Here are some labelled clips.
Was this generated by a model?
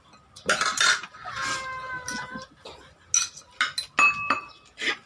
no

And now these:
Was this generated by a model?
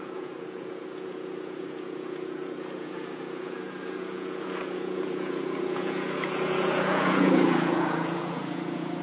yes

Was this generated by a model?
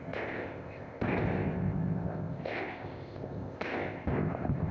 yes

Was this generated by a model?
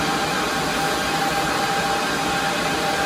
no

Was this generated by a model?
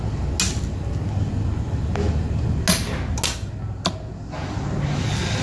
no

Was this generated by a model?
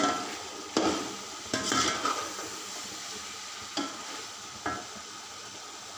yes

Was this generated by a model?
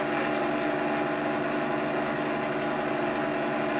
no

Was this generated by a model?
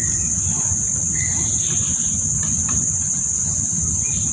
no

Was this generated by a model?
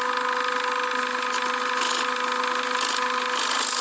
no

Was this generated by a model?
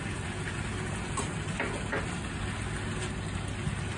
no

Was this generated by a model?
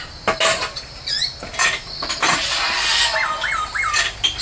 no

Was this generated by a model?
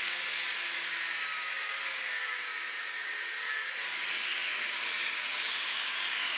yes